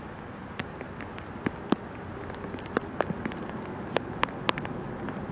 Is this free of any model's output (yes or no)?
yes